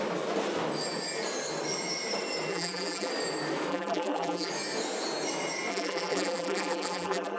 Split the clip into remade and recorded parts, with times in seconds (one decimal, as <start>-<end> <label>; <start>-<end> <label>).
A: 0.0-2.5 recorded; 2.5-3.1 remade; 3.1-3.7 recorded; 3.7-4.5 remade; 4.5-5.7 recorded; 5.7-7.4 remade